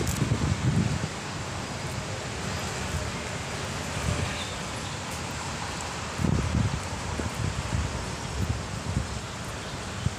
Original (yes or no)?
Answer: yes